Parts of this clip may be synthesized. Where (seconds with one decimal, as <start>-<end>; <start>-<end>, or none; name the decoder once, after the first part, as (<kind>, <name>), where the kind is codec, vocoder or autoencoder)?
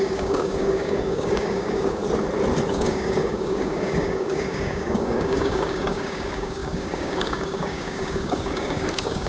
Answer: 0.0-2.0 (codec, DAC); 2.7-9.3